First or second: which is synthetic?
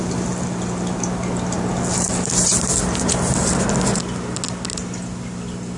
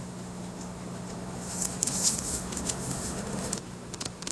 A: second